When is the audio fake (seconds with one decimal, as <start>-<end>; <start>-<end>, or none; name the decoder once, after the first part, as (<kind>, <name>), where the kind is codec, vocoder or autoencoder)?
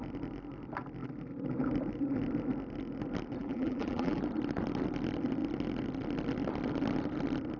3.4-4.2 (vocoder, BigVGAN v2)